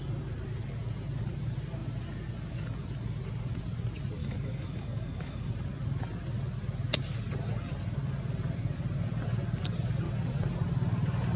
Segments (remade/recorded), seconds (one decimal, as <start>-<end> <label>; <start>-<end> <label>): 0.0-4.2 recorded; 4.2-5.5 remade; 5.5-11.4 recorded